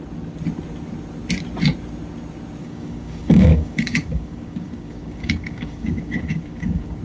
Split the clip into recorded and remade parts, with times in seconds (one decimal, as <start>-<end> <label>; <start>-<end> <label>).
0.0-2.6 recorded; 2.6-7.0 remade